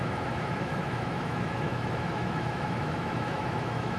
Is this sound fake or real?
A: fake